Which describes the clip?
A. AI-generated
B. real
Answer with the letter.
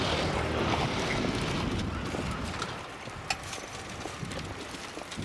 B